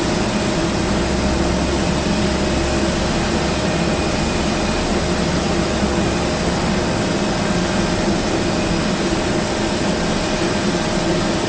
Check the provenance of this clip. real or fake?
real